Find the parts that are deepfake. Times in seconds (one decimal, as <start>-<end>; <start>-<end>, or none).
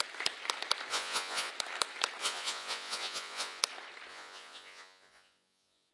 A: 0.9-1.5; 2.2-3.6; 4.1-5.9